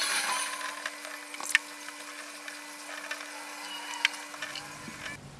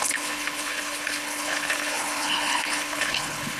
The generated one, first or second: second